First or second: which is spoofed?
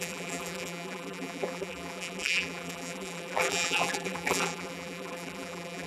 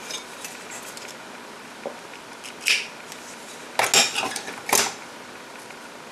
first